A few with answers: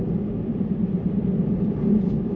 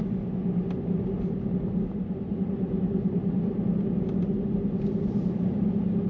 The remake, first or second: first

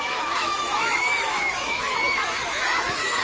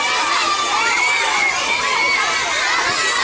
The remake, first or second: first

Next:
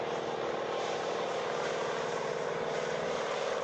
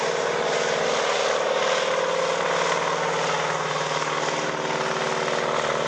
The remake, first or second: first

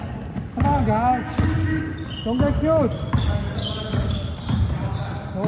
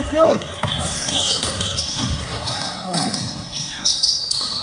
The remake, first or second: second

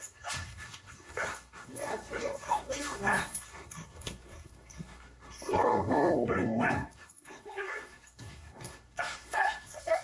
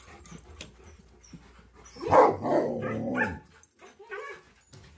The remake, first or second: first